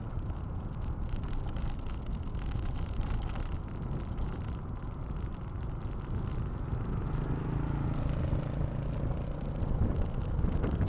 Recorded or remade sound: recorded